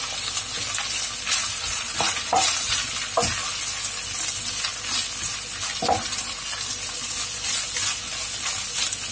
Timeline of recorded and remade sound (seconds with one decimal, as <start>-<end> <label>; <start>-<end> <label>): 0.0-1.4 recorded; 1.4-2.8 remade; 2.8-9.1 recorded